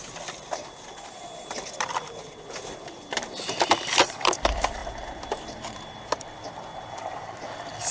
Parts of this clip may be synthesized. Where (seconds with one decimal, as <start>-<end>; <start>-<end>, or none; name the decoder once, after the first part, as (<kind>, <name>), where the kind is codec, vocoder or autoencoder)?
0.0-7.9 (vocoder, BigVGAN v2)